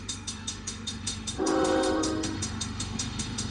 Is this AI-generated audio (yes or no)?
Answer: yes